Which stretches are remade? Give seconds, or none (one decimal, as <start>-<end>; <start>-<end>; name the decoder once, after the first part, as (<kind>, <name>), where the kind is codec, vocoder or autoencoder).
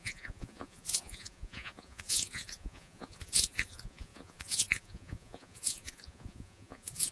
0.0-7.1 (vocoder, Vocos)